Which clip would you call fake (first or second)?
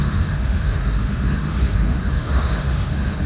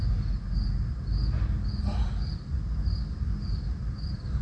first